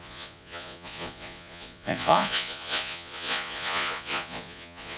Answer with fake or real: fake